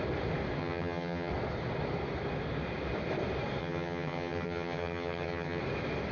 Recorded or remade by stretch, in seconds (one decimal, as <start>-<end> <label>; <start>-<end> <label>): 0.0-0.6 recorded; 0.6-1.3 remade; 1.3-3.6 recorded; 3.6-5.6 remade; 5.6-6.1 recorded